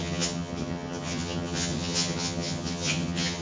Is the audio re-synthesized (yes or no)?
yes